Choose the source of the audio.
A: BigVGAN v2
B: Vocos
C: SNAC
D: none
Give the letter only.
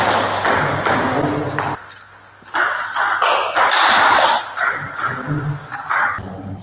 D